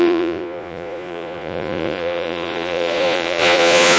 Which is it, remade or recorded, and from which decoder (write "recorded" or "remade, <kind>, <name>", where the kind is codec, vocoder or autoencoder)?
remade, vocoder, Vocos